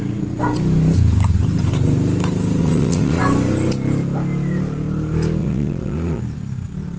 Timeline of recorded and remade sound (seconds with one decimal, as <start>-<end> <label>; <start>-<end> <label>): 0.0-2.6 recorded; 2.6-3.2 remade; 3.2-5.4 recorded; 5.4-6.2 remade; 6.2-7.0 recorded